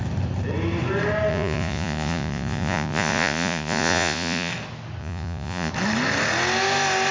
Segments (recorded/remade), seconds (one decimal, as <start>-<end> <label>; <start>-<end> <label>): 0.0-1.3 recorded; 1.3-4.5 remade; 4.5-5.0 recorded; 5.0-5.7 remade; 5.7-7.1 recorded